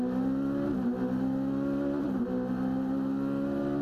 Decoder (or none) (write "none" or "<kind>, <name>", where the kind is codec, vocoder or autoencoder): none